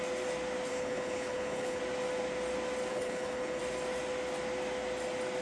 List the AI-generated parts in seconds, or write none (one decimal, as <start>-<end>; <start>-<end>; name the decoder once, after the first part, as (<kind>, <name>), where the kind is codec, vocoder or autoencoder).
0.7-1.8 (codec, HILCodec); 2.9-3.6